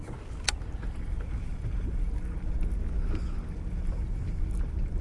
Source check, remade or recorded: recorded